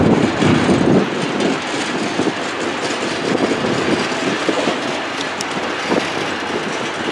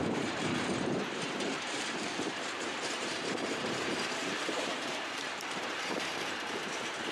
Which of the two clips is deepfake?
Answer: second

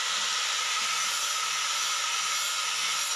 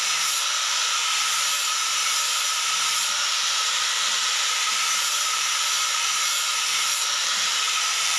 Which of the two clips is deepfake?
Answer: second